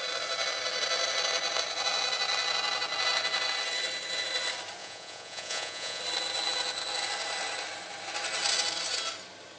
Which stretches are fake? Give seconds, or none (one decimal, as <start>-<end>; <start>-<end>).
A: 4.8-6.0